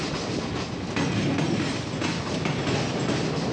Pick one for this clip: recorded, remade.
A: recorded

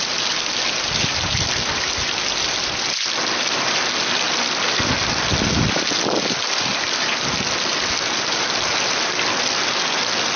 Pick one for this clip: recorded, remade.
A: recorded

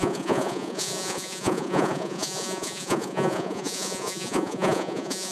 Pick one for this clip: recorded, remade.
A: remade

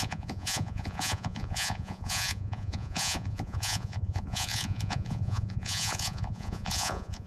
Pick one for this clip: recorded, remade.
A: remade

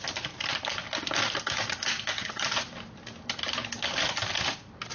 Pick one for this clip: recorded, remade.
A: recorded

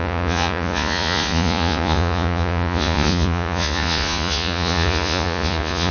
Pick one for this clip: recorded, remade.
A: remade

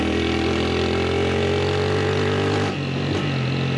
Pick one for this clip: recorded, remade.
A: recorded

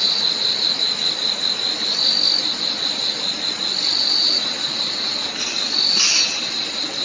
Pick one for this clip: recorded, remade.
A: recorded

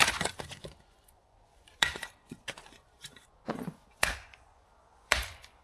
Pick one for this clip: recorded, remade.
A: remade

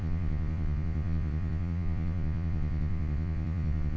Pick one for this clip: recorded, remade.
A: remade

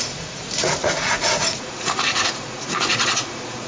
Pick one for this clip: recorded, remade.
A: remade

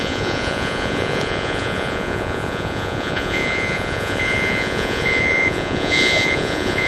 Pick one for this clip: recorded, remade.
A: remade